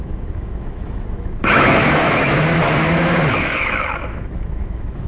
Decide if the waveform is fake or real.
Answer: fake